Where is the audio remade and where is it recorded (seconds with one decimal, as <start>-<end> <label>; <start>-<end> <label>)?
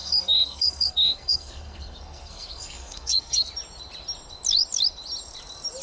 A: 0.0-3.5 remade; 3.5-5.8 recorded